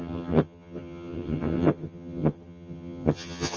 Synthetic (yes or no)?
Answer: yes